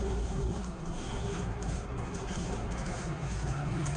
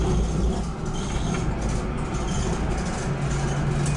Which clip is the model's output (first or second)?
first